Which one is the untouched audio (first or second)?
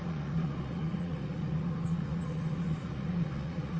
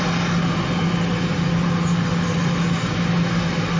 second